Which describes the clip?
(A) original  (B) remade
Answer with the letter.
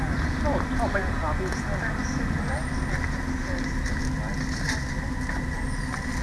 A